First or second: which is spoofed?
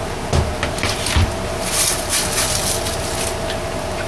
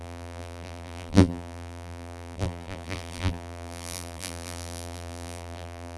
second